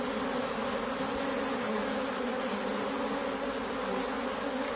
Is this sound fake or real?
real